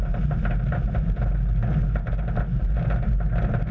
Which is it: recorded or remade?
recorded